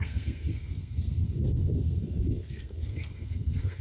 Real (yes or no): no